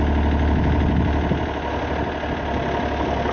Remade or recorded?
recorded